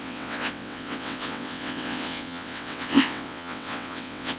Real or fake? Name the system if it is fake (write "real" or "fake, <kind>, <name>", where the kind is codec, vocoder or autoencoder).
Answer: fake, vocoder, WaveNeXt